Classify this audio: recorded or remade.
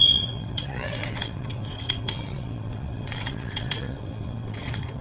remade